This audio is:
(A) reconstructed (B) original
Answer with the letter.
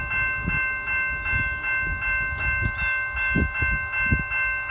B